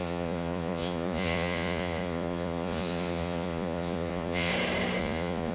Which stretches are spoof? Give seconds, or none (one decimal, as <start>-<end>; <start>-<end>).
0.0-4.5; 5.0-5.5